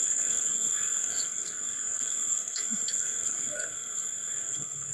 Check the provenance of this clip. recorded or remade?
remade